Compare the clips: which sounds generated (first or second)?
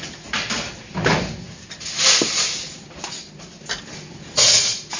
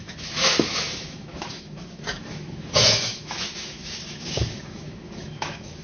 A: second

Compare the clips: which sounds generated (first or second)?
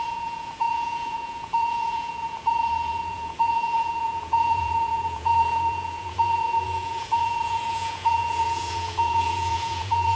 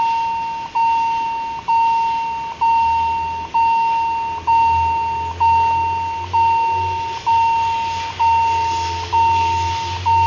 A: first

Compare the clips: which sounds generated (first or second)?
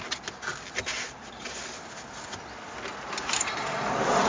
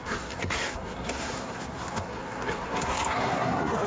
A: second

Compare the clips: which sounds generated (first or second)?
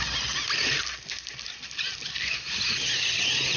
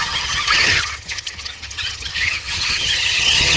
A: second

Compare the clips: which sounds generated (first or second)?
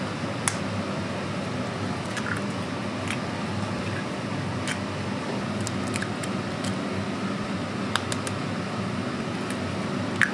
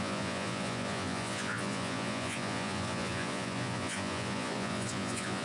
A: second